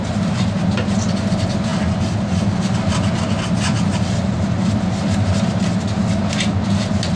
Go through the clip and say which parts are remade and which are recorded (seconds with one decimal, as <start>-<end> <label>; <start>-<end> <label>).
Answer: 0.0-7.2 recorded